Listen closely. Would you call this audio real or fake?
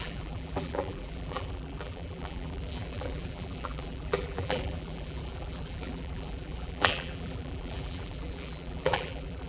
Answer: fake